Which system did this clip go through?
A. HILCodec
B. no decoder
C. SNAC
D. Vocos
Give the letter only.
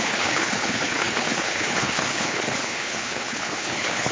A